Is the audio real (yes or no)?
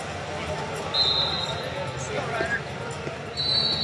yes